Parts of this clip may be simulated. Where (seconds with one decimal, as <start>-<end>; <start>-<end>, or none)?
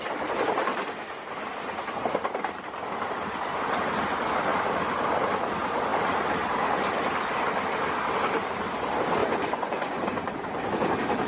9.2-10.3